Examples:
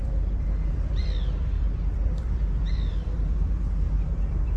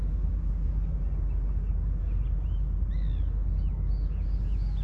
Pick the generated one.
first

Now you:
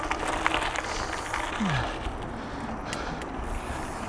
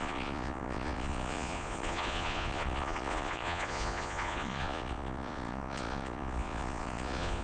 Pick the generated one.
second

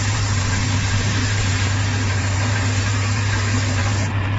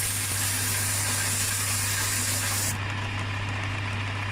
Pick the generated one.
first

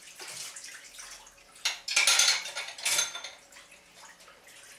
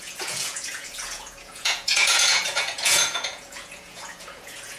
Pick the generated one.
second